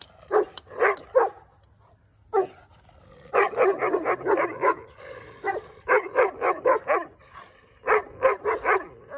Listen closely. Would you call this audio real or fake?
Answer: real